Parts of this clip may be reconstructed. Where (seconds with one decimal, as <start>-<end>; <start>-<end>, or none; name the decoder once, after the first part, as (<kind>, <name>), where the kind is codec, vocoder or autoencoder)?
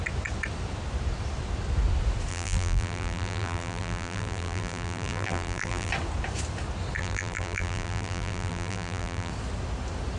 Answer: 2.3-5.9 (vocoder, BigVGAN v2); 7.0-9.3